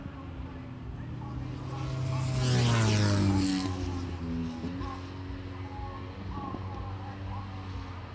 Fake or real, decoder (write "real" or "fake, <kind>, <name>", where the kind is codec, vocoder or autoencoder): real